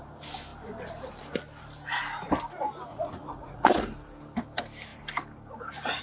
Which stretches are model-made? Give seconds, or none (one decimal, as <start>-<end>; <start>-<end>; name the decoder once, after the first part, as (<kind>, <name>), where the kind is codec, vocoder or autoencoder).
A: 2.9-3.7 (vocoder, Vocos)